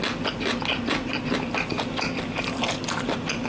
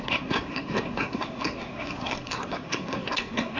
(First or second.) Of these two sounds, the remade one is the second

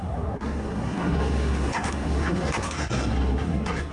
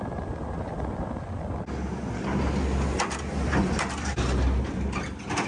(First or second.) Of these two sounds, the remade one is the first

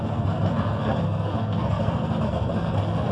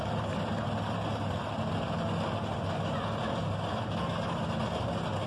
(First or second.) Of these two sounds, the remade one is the first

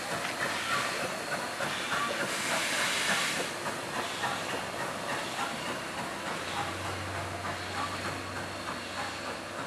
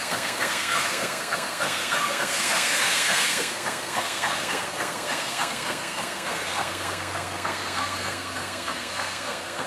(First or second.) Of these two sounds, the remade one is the second